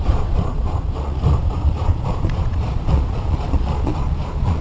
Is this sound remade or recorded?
remade